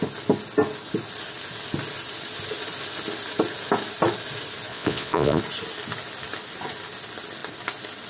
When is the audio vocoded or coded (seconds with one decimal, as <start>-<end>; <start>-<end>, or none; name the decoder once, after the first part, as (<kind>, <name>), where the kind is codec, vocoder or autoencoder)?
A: 4.7-5.4 (vocoder, Vocos)

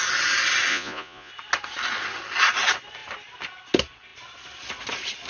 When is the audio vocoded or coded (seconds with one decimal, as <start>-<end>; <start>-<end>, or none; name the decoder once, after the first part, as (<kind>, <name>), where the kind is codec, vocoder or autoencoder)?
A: 0.7-1.3 (vocoder, Vocos)

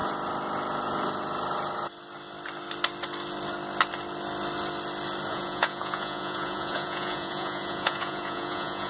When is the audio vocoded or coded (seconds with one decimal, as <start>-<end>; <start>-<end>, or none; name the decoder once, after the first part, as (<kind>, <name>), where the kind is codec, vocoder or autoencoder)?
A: 5.3-8.9 (vocoder, Vocos)